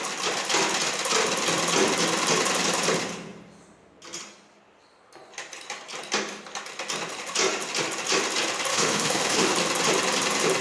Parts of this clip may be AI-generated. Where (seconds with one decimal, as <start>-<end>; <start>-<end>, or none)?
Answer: 8.7-9.5